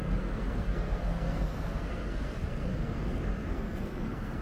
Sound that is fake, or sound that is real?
fake